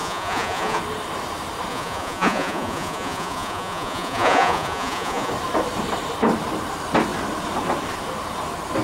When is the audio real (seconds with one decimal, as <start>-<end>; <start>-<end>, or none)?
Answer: 0.8-1.7; 5.3-8.8

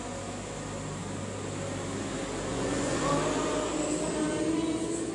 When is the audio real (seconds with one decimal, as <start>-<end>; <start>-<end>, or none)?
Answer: 0.0-2.5; 3.1-5.1

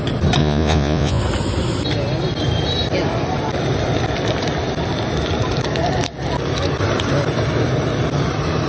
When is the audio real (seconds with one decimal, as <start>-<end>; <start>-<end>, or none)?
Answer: 0.0-0.4; 1.2-8.7

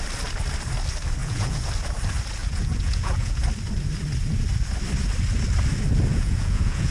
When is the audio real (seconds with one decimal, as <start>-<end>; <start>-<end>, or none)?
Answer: 0.0-1.2; 1.7-2.4; 3.4-6.1

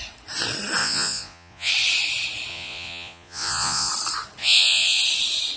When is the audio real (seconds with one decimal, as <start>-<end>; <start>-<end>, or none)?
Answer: 0.0-0.8; 1.7-2.5; 3.9-4.4; 5.0-5.6

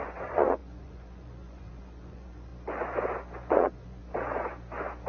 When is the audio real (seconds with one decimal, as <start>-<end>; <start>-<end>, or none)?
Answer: 2.5-3.5; 4.0-5.1

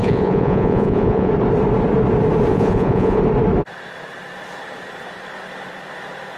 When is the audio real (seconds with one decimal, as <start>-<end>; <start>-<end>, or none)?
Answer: 1.3-2.5; 3.2-6.4